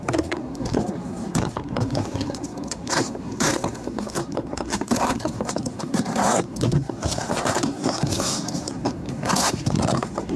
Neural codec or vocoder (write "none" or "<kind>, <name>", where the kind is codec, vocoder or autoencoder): codec, SNAC